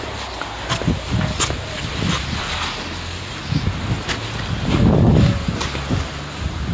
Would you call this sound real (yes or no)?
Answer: yes